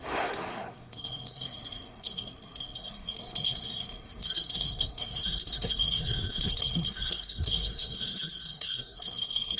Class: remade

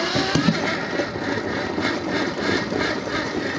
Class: recorded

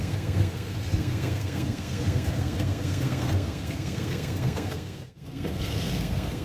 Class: remade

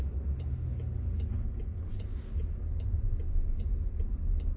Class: recorded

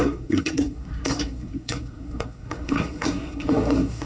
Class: remade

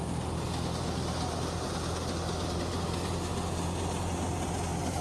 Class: recorded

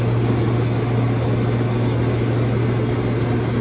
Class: recorded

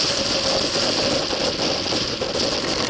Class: recorded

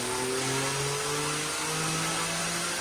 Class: recorded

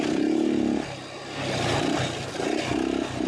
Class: recorded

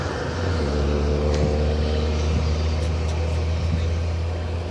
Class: recorded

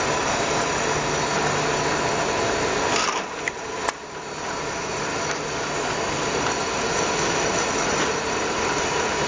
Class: recorded